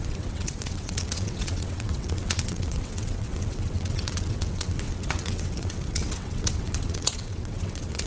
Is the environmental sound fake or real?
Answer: fake